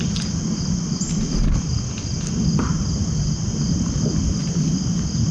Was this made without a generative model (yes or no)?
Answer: yes